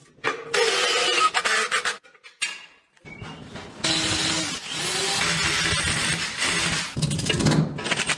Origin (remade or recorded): recorded